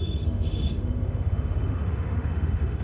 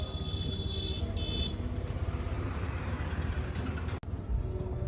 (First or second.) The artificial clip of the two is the first